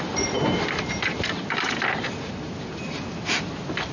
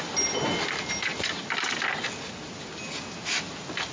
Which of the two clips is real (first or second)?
second